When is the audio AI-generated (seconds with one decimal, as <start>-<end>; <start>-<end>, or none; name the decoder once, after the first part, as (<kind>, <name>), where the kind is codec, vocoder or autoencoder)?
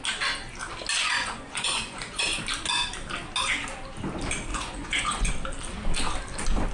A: 1.0-2.2 (vocoder, Vocos); 4.5-5.3